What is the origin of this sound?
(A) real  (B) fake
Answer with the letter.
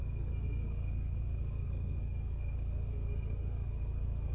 B